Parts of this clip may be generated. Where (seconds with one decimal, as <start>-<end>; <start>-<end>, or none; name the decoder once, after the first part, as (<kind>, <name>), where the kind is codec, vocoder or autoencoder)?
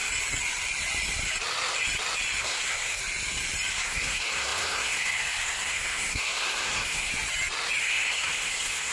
2.4-3.0 (codec, SNAC); 3.7-7.1; 7.8-8.9